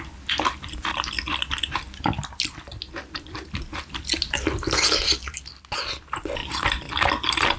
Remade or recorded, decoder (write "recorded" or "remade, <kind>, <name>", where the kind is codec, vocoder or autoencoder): recorded